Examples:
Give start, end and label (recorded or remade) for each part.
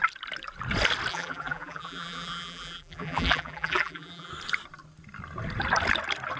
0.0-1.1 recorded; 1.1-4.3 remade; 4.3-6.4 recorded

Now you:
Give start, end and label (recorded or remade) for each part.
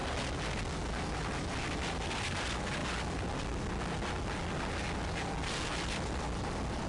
0.0-6.9 recorded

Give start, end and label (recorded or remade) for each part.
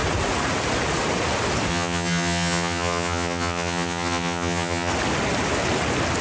0.0-1.7 recorded; 1.7-4.9 remade; 4.9-6.2 recorded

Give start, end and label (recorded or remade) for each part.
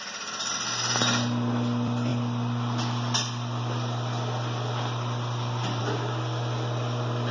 0.0-7.3 recorded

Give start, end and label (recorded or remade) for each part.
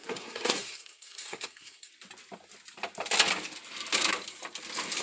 0.0-1.9 remade; 1.9-5.0 recorded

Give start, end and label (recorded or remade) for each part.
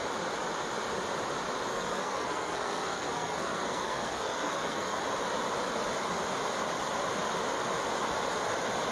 0.0-1.7 recorded; 1.7-5.0 remade; 5.0-8.9 recorded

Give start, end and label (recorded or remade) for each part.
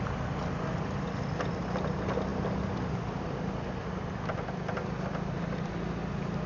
0.0-6.5 recorded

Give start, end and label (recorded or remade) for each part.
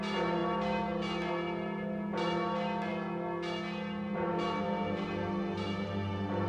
0.0-6.5 recorded